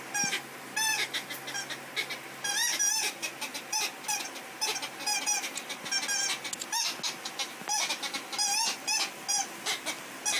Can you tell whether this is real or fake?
real